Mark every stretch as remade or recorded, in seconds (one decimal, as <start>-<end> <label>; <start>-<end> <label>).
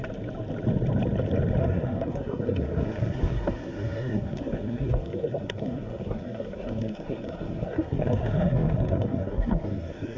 0.0-1.6 recorded; 1.6-10.2 remade